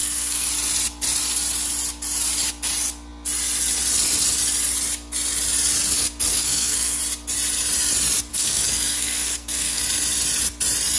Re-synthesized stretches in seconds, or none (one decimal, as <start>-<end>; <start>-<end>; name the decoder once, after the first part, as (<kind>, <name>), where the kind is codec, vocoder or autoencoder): 0.0-0.5 (codec, SNAC); 6.3-7.0; 8.3-9.8